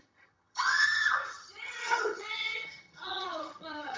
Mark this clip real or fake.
fake